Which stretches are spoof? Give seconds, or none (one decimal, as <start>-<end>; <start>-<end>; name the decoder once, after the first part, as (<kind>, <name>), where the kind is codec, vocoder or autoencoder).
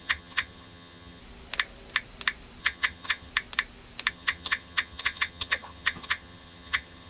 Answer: 0.0-1.2 (vocoder, HiFi-GAN); 2.6-3.3; 4.1-7.1